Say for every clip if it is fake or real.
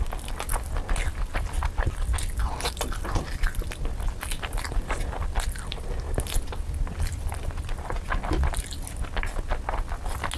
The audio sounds real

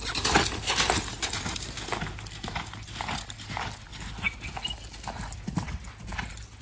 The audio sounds real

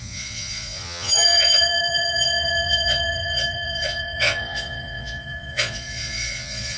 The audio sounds fake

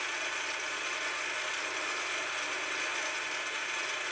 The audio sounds real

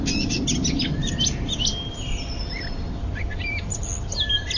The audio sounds real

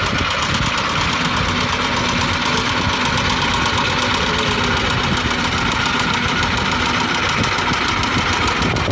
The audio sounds real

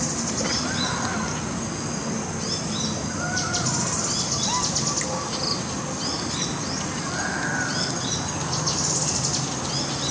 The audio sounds real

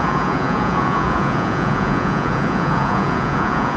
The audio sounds fake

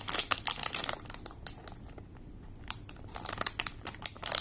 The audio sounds real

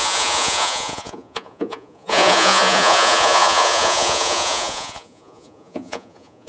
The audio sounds fake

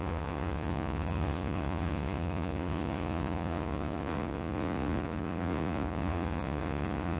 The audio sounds fake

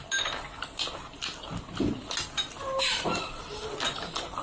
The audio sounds real